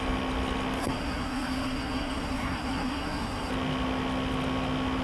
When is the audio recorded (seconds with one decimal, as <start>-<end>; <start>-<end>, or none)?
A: 0.0-0.8; 3.5-5.0